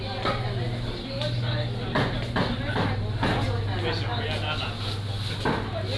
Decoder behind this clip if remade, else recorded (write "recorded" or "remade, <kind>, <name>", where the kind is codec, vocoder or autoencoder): recorded